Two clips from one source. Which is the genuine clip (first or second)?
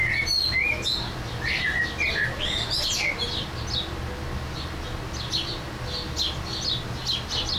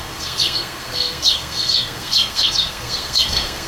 first